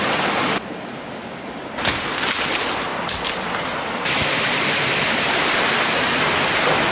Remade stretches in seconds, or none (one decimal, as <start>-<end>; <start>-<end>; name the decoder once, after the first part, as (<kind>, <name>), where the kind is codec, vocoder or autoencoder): none